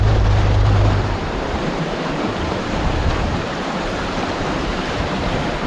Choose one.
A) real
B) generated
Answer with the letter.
B